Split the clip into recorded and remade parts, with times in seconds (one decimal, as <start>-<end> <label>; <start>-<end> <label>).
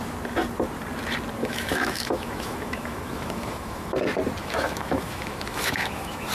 0.0-1.4 recorded; 1.4-3.9 remade; 3.9-4.4 recorded; 4.4-6.3 remade